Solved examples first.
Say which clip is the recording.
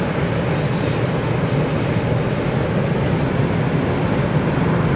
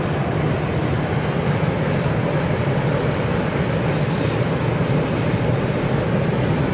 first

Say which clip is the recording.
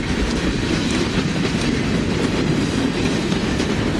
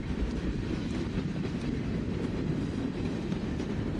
first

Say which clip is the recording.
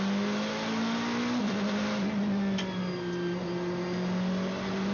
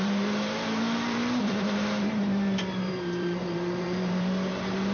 first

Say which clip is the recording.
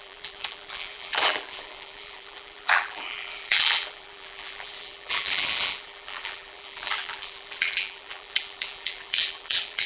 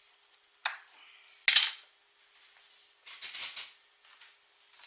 second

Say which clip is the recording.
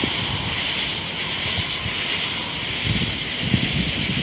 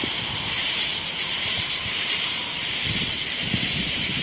first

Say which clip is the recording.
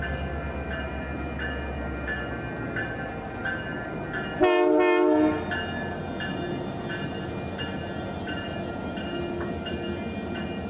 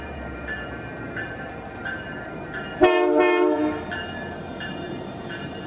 first